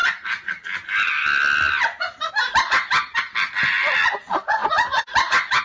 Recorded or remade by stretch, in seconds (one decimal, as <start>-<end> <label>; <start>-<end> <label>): 0.0-4.6 recorded; 4.6-5.6 remade

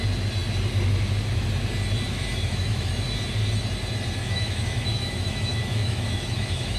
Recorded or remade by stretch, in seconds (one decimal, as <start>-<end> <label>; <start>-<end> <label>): 0.0-2.1 recorded; 2.1-2.9 remade; 2.9-4.2 recorded; 4.2-6.8 remade

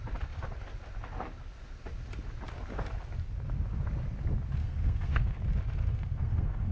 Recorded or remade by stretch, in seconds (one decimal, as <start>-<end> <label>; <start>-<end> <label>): 0.0-4.6 recorded; 4.6-5.4 remade; 5.4-5.9 recorded; 5.9-6.7 remade

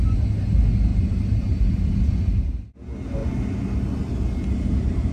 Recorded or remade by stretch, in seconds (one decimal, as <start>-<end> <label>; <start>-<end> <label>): 0.0-0.9 recorded; 0.9-1.6 remade; 1.6-5.1 recorded

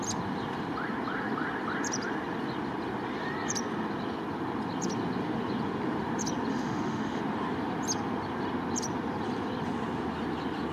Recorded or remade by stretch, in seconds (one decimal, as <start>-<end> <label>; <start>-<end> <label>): 0.0-6.5 recorded; 6.5-7.2 remade; 7.2-10.7 recorded

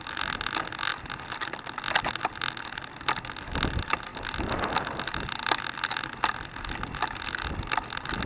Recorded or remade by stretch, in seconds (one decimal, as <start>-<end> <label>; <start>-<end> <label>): 0.0-8.3 recorded

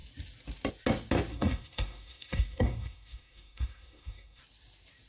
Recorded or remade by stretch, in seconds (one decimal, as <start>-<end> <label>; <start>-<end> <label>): 0.0-1.3 recorded; 1.3-4.4 remade; 4.4-5.1 recorded

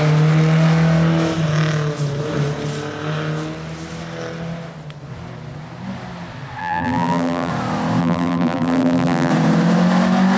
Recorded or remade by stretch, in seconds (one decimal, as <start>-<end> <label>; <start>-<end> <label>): 0.0-6.6 recorded; 6.6-7.5 remade; 7.5-8.0 recorded; 8.0-9.3 remade; 9.3-10.4 recorded